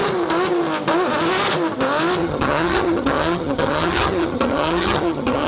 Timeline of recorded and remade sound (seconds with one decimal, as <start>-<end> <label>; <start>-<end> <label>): 0.0-2.2 recorded; 2.2-5.5 remade